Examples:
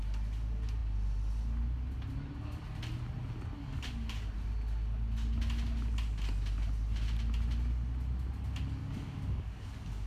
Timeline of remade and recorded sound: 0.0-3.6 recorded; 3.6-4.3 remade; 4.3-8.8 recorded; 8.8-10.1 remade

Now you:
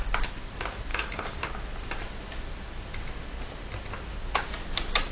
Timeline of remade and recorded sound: 0.0-0.9 recorded; 0.9-1.5 remade; 1.5-5.1 recorded

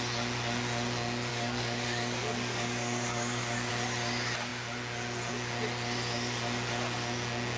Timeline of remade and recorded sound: 0.0-1.3 recorded; 1.3-3.7 remade; 3.7-7.6 recorded

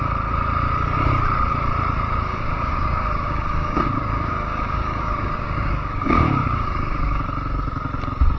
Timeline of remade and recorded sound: 0.0-2.3 recorded; 2.3-7.2 remade; 7.2-8.4 recorded

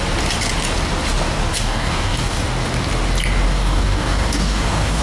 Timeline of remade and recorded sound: 0.0-1.5 recorded; 1.5-2.4 remade; 2.4-3.5 recorded; 3.5-5.0 remade

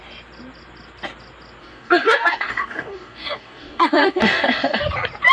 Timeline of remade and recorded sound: 0.0-1.6 recorded; 1.6-4.8 remade; 4.8-5.3 recorded

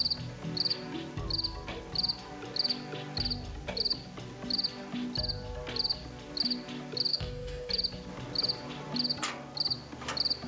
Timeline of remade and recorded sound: 0.0-7.1 recorded; 7.1-7.7 remade; 7.7-10.5 recorded

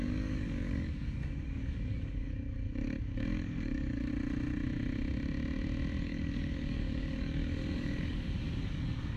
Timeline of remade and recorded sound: 0.0-4.1 remade; 4.1-6.0 recorded; 6.0-9.2 remade